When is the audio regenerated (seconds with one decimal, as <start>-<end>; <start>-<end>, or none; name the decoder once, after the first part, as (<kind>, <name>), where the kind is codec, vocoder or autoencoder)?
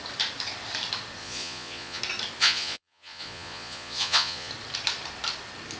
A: 1.2-2.0 (vocoder, Vocos); 2.4-4.5